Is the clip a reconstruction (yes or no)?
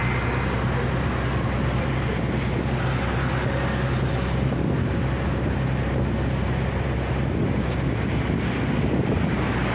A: no